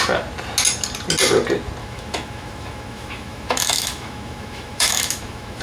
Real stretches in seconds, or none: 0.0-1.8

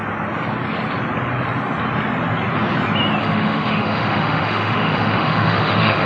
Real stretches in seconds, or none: 0.0-3.2

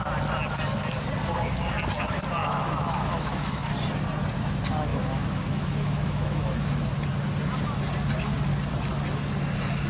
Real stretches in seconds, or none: 0.0-2.4; 3.7-4.9; 6.9-9.9